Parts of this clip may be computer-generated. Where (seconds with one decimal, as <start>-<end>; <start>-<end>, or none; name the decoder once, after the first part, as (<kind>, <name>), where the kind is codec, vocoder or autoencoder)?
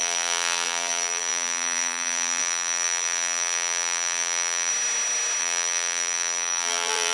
0.0-4.7 (vocoder, BigVGAN v2); 5.4-7.1